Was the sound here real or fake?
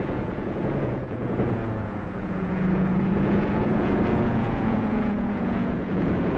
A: fake